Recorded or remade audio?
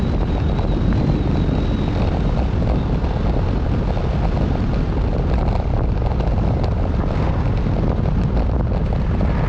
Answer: recorded